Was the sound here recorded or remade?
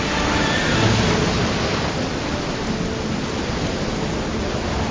recorded